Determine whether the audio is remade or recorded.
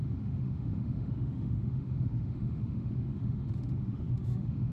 remade